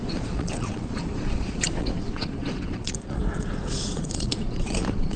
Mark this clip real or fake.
fake